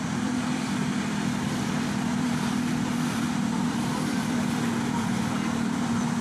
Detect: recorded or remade remade